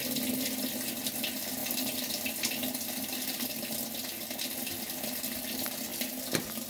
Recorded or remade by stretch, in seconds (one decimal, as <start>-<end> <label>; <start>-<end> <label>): 0.0-6.7 recorded